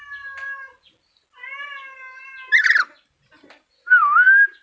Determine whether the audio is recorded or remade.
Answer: recorded